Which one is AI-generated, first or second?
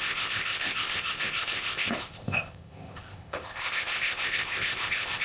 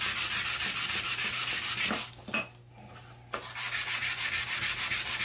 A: first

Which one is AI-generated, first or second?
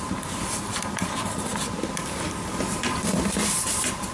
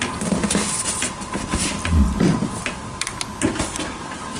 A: first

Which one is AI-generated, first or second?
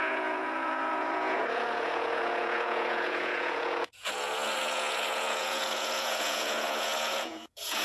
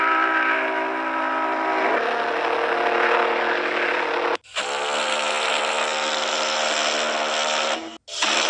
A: first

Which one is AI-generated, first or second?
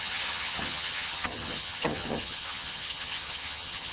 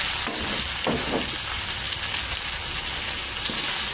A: first